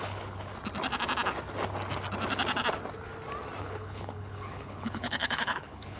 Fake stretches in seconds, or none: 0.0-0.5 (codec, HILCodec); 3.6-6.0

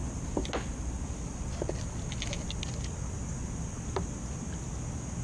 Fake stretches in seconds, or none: none

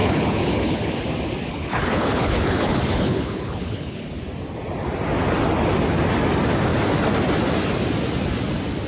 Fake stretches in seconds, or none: 0.0-0.9 (codec, HILCodec); 1.5-4.1

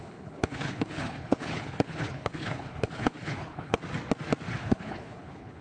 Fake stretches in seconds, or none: 0.0-3.8 (codec, HILCodec); 4.5-5.6

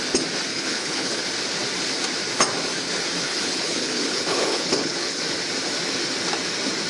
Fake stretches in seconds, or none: 0.5-1.2 (codec, HILCodec); 3.2-5.2

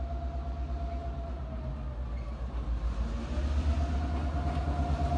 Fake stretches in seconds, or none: none

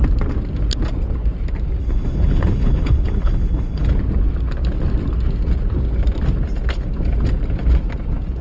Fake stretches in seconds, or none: 1.8-3.9 (codec, HILCodec)